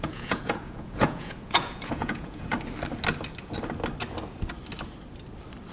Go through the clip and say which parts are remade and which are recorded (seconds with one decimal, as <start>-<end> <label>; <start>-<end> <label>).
0.0-2.5 remade; 2.5-5.7 recorded